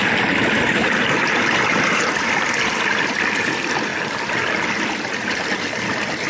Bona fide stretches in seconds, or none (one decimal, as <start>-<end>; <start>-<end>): 0.0-0.8; 2.1-6.3